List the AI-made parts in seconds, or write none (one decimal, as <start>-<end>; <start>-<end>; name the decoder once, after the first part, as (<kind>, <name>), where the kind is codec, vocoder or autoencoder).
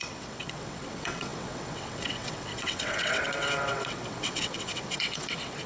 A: 0.0-5.7 (vocoder, WaveNeXt)